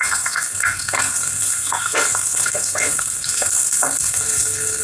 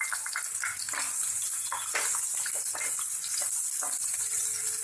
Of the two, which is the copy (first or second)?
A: first